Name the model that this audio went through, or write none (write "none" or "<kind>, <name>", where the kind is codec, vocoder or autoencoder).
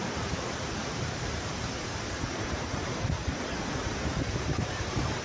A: vocoder, BigVGAN v2